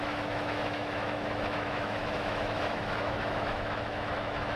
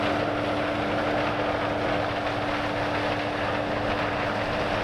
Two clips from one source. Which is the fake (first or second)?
first